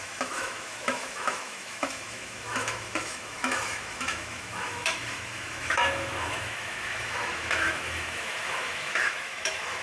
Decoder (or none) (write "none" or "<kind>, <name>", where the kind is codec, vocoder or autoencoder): autoencoder, DAC-VAE